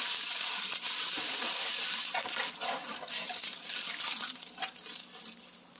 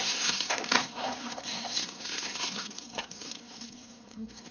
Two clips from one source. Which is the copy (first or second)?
second